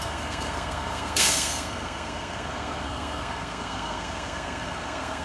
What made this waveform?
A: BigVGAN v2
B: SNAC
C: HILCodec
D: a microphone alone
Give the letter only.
B